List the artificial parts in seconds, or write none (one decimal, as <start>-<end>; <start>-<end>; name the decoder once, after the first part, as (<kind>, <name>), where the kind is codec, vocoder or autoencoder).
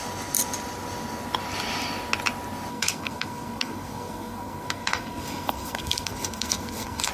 2.7-7.1 (codec, SNAC)